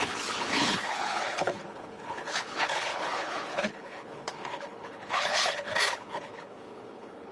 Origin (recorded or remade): remade